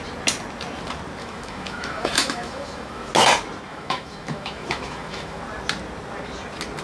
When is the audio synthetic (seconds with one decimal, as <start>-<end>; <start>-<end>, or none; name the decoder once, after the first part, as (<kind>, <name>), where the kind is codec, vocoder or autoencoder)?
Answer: 1.2-3.1 (autoencoder, DAC-VAE); 3.7-5.4